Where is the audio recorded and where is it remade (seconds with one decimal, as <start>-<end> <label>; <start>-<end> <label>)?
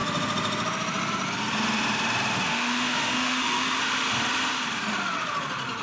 0.0-2.5 recorded; 2.5-3.8 remade; 3.8-5.8 recorded